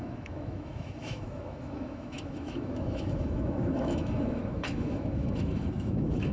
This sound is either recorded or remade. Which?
remade